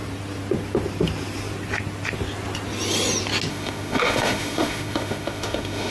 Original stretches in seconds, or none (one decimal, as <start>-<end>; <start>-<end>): 0.0-3.5